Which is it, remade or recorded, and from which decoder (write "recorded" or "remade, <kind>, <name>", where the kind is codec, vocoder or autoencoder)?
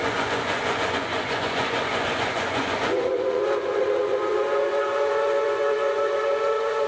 remade, vocoder, Vocos